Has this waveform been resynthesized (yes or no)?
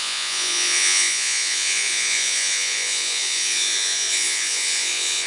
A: yes